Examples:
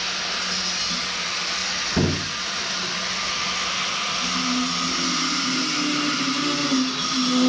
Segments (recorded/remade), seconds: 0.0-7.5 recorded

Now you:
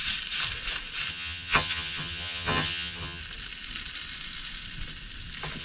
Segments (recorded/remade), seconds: 0.0-1.1 recorded; 1.1-3.2 remade; 3.2-5.6 recorded